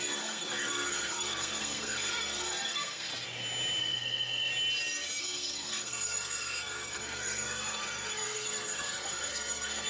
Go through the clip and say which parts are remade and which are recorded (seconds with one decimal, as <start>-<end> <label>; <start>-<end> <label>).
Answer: 0.0-3.1 remade; 3.1-3.8 recorded; 3.8-4.5 remade; 4.5-5.2 recorded; 5.2-9.9 remade